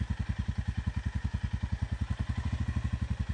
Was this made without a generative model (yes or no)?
yes